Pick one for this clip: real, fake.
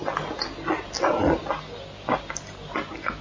real